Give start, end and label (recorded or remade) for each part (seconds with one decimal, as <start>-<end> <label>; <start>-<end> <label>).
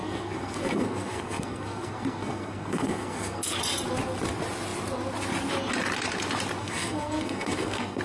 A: 0.0-3.6 remade; 3.6-6.6 recorded; 6.6-8.0 remade